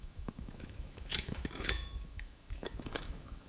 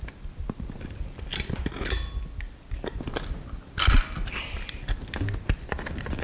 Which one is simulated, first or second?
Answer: first